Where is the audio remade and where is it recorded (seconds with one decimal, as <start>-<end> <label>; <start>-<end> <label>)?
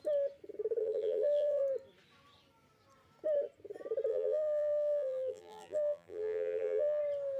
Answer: 0.0-0.8 recorded; 0.8-1.6 remade; 1.6-4.1 recorded; 4.1-7.0 remade; 7.0-7.4 recorded